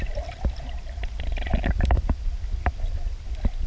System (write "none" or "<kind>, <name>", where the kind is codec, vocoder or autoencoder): none